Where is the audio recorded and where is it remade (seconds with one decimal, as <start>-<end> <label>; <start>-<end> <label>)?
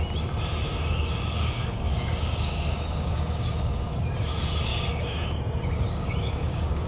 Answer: 0.0-0.7 recorded; 0.7-4.0 remade; 4.0-4.7 recorded; 4.7-6.9 remade